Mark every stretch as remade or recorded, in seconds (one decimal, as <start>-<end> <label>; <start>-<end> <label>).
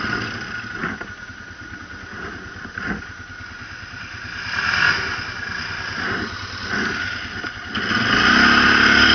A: 0.0-9.1 recorded